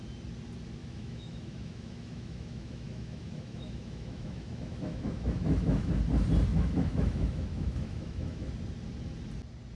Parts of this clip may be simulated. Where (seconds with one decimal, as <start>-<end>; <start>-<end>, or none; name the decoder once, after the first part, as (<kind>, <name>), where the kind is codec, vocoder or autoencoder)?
0.8-5.9 (autoencoder, DAC-VAE); 6.5-8.5

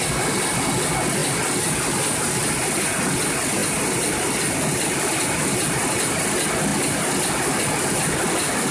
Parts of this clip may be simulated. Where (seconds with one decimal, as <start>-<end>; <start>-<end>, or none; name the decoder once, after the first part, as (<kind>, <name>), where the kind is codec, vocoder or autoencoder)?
none

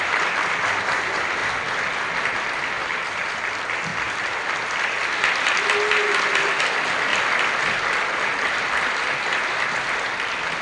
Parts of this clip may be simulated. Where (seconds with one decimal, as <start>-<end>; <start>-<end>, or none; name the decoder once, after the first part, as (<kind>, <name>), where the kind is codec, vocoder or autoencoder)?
0.0-1.4 (vocoder, BigVGAN v2); 2.3-3.9; 6.3-10.6

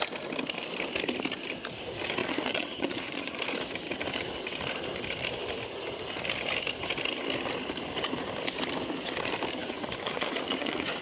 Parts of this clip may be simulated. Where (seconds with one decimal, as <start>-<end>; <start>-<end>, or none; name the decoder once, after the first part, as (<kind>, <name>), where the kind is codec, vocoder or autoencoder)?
2.2-3.4 (vocoder, Vocos); 9.6-11.0

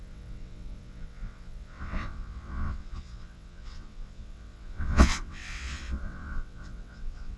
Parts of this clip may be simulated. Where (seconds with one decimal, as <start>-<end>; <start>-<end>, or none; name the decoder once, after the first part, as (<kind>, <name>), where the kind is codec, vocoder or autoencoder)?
0.0-7.4 (vocoder, WaveNeXt)

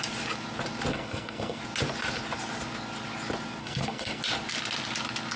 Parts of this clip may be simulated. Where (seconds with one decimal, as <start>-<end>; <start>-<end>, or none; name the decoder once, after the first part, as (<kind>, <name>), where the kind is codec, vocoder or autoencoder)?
0.9-1.6 (codec, SNAC); 3.6-4.2

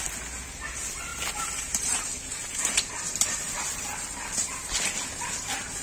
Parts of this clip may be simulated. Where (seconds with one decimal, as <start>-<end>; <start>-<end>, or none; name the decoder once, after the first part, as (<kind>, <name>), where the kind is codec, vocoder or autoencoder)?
none